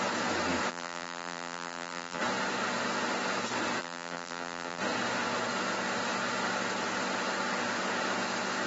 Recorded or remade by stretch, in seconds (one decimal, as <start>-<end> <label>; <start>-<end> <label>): 0.0-0.7 recorded; 0.7-2.2 remade; 2.2-3.8 recorded; 3.8-4.8 remade; 4.8-8.7 recorded

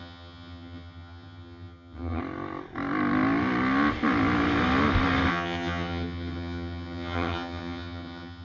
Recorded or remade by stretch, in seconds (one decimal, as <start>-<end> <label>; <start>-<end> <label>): 0.0-2.2 remade; 2.2-5.3 recorded; 5.3-8.4 remade